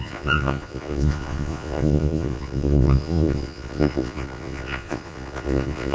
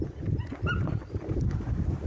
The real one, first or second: second